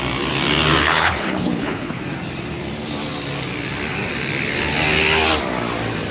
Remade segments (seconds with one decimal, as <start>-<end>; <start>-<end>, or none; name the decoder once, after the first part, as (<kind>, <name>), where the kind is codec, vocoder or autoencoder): 0.8-2.0 (codec, HILCodec)